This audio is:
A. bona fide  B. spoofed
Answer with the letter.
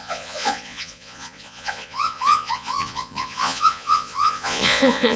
B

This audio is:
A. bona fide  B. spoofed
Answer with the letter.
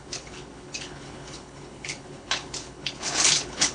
B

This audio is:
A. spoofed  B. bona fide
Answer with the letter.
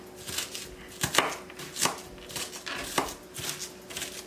B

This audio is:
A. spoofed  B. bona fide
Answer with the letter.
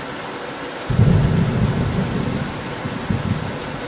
B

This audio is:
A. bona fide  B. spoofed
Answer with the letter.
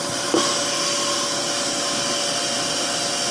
A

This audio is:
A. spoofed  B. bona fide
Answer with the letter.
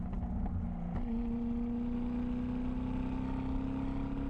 B